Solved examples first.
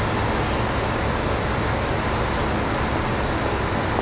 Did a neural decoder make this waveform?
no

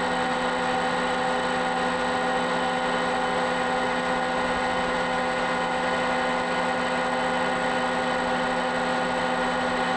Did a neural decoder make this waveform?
no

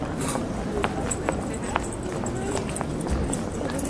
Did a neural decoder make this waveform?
yes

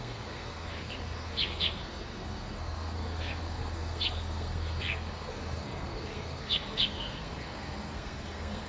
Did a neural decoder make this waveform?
yes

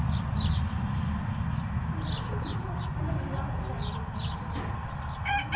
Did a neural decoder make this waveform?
no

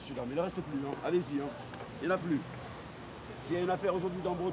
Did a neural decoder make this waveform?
no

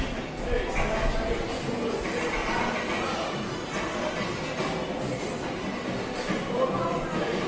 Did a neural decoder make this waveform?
no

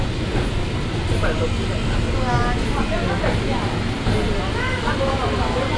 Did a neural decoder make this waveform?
no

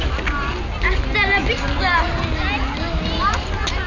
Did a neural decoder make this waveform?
no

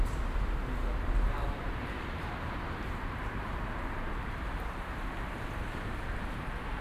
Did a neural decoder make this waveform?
yes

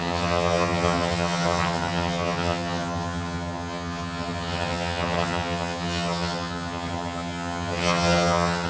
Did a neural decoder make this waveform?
yes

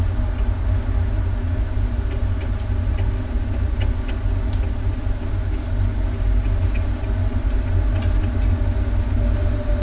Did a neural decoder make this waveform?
no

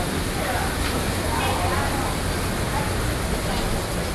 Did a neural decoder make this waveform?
no